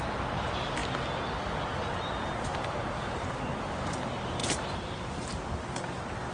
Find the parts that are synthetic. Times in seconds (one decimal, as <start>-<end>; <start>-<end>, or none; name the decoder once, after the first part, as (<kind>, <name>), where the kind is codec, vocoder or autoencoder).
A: 2.5-3.7 (vocoder, BigVGAN v2); 4.4-5.5